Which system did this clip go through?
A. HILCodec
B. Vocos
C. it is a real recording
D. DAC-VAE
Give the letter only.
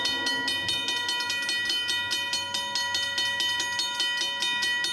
C